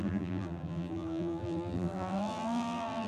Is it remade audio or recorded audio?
remade